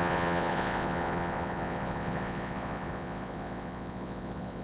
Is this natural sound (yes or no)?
no